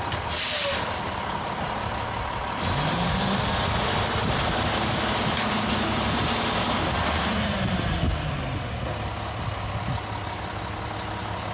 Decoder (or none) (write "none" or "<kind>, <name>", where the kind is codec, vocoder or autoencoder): none